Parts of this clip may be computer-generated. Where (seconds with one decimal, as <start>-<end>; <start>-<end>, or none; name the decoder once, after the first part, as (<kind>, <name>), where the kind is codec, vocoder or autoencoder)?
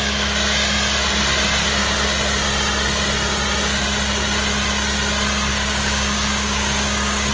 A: 5.5-7.3 (codec, DAC)